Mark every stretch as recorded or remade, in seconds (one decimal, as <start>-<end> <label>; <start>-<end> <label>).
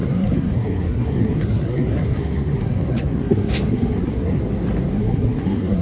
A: 0.0-4.4 remade; 4.4-4.9 recorded; 4.9-5.8 remade